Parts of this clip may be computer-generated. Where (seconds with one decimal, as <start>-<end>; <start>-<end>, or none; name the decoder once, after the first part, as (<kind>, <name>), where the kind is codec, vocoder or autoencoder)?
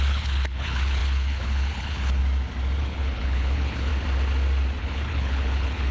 0.0-2.2 (codec, HILCodec); 2.8-3.9; 4.8-5.9